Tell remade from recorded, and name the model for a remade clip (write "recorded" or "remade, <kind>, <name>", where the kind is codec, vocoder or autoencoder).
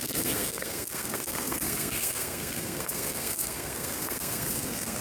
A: remade, codec, SNAC